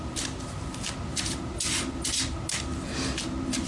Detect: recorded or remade recorded